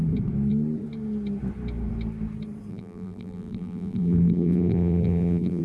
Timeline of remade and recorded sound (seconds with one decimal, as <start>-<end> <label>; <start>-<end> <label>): 0.0-2.7 recorded; 2.7-5.6 remade